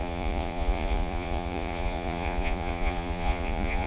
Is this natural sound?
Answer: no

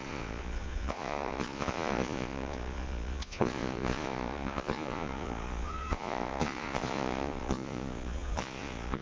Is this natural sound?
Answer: no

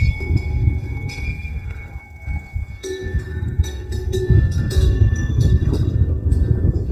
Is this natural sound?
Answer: no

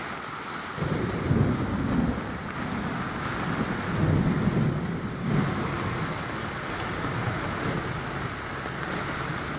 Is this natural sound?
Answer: yes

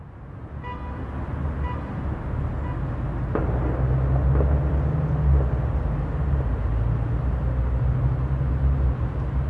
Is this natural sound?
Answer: yes